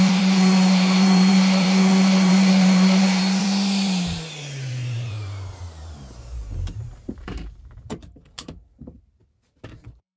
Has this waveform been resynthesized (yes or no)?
yes